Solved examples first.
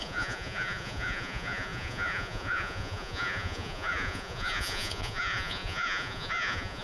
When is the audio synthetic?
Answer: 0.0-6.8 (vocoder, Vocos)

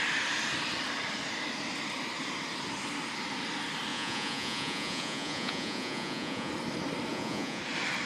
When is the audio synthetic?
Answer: 3.9-6.5 (vocoder, Vocos); 7.1-7.6

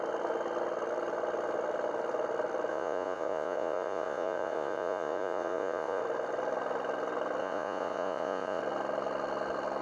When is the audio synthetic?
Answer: 2.7-6.0 (vocoder, Vocos); 7.4-8.6

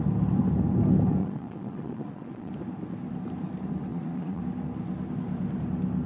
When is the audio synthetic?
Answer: 1.2-2.5 (vocoder, Vocos); 3.9-4.4

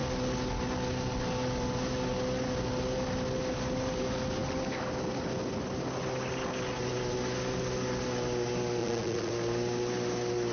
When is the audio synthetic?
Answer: 8.8-9.3 (vocoder, Vocos)

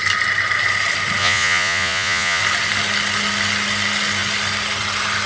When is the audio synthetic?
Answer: 1.2-2.4 (vocoder, Vocos)

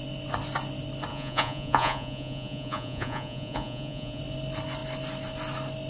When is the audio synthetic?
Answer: 1.1-4.2 (vocoder, Vocos)

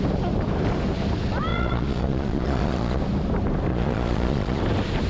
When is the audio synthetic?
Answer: 1.5-3.0 (vocoder, Vocos); 3.7-4.6